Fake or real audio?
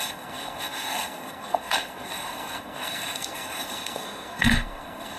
fake